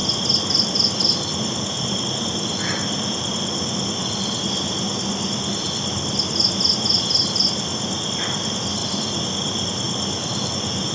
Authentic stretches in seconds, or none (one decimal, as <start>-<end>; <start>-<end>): 0.0-10.9